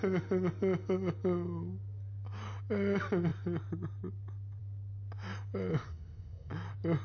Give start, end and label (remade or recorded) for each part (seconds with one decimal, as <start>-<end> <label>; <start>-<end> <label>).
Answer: 0.0-5.7 recorded; 5.7-6.5 remade; 6.5-7.0 recorded